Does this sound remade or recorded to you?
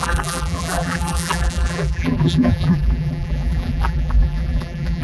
remade